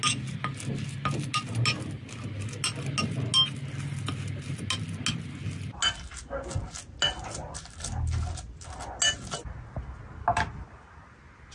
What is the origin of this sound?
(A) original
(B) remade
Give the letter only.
A